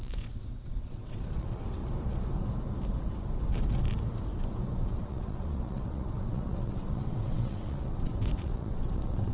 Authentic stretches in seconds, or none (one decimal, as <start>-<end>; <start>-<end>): 1.8-4.9